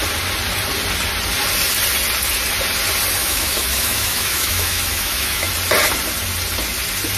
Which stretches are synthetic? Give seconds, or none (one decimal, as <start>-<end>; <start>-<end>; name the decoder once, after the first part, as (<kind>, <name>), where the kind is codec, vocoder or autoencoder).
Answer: 3.2-5.5 (autoencoder, DAC-VAE)